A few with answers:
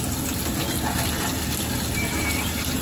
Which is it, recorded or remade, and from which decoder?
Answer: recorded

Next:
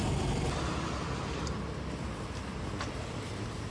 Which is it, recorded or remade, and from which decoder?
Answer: recorded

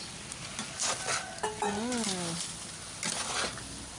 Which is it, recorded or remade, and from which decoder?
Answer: recorded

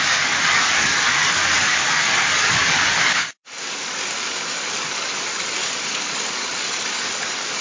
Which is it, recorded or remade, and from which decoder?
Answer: remade, codec, DAC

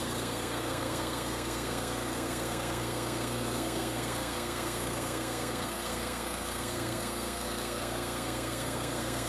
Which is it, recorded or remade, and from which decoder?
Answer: remade, codec, SNAC